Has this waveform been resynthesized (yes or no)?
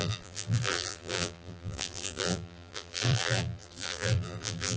yes